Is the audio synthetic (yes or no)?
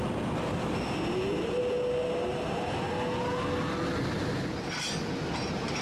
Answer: no